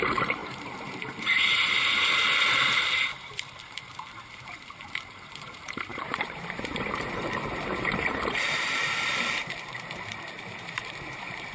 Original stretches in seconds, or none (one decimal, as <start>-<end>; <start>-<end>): none